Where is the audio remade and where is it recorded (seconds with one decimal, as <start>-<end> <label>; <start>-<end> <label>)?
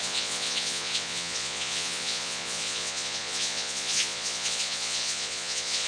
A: 0.0-5.9 remade